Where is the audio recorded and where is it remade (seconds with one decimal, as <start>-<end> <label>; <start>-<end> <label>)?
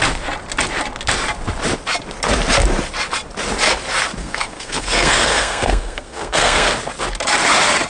0.0-4.2 recorded; 4.2-6.7 remade; 6.7-7.9 recorded